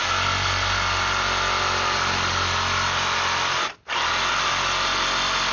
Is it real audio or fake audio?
real